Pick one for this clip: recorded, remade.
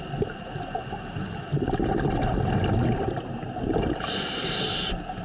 recorded